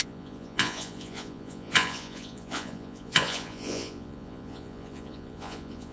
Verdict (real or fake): fake